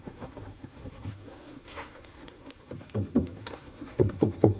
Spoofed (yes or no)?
yes